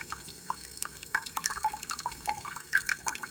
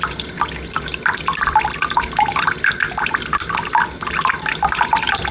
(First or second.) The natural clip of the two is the second